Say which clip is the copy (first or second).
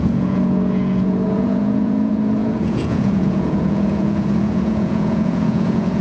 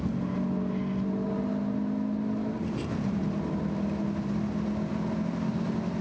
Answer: first